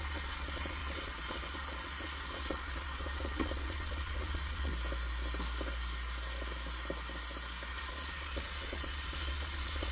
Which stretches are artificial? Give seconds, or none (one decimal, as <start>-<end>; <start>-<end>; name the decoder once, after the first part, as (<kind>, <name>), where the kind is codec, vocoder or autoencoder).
0.0-4.7 (vocoder, Vocos); 7.7-9.9